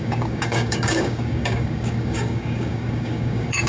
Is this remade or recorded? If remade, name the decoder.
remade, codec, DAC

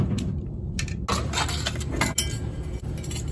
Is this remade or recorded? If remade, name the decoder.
recorded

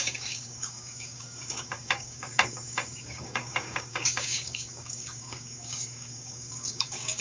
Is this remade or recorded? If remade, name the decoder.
remade, codec, DAC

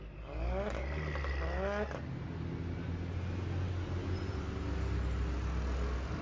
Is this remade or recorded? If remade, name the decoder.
recorded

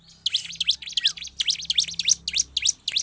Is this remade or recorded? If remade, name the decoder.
recorded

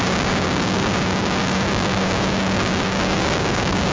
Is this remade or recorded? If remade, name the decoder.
remade, codec, DAC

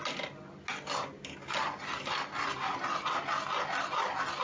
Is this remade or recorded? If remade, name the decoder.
recorded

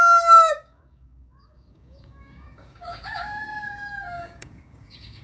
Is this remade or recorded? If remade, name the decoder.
remade, codec, DAC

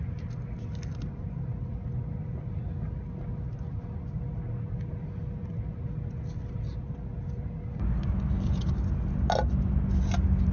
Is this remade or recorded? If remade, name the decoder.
recorded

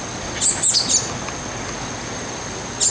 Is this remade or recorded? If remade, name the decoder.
recorded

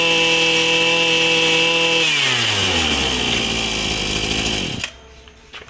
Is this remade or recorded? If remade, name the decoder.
recorded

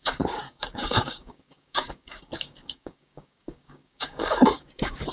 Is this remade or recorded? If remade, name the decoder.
remade, codec, DAC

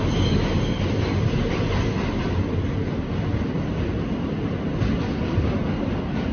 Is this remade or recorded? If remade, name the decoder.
recorded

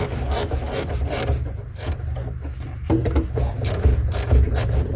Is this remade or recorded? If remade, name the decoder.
recorded